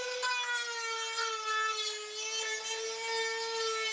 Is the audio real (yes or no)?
yes